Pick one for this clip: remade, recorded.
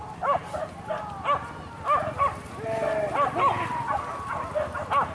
recorded